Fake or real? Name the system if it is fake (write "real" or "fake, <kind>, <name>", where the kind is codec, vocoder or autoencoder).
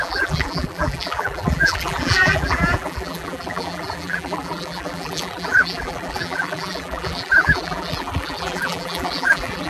fake, vocoder, BigVGAN v2